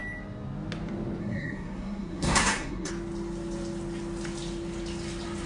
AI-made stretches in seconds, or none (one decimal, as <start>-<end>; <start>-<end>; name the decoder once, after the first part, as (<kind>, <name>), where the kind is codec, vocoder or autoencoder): 1.2-2.9 (codec, SNAC)